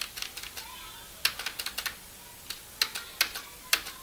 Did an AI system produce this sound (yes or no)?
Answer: no